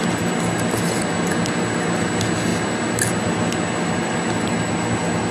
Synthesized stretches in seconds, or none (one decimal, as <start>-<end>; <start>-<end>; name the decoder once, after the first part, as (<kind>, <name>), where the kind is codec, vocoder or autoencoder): none

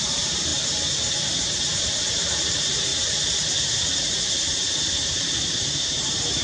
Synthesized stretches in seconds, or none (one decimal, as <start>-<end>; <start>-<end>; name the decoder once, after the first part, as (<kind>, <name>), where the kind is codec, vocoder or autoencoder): 0.0-0.5 (vocoder, BigVGAN v2); 1.8-2.9; 5.7-6.4

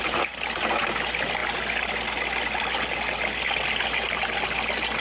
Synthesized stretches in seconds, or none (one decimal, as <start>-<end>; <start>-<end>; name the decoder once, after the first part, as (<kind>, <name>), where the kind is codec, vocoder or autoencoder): none

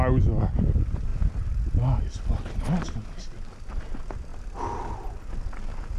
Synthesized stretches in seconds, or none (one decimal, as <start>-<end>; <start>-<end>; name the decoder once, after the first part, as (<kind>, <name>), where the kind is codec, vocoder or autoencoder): 4.3-5.3 (vocoder, BigVGAN v2)